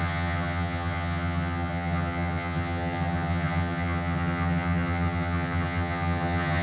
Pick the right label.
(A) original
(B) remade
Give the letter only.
B